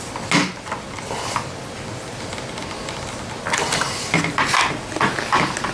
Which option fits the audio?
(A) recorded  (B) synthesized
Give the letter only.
A